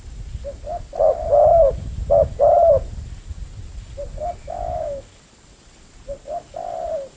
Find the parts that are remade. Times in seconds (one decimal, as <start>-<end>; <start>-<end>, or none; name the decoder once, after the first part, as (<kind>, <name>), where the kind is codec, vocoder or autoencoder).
4.4-5.0 (autoencoder, DAC-VAE)